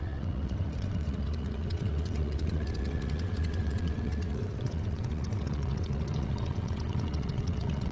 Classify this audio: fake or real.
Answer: fake